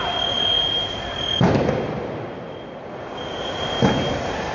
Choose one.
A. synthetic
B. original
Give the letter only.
B